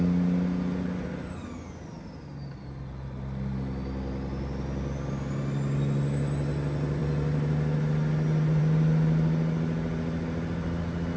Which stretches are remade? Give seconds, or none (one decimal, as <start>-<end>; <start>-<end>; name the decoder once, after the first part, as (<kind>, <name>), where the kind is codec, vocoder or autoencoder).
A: none